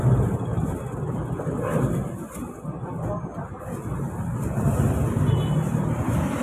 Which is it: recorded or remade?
recorded